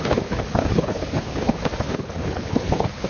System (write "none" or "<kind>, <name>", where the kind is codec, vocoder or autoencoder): codec, HILCodec